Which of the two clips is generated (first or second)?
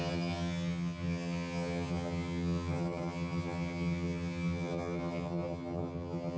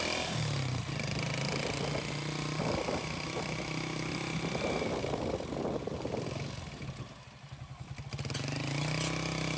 first